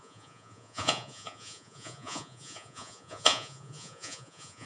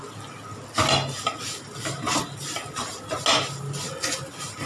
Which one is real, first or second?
second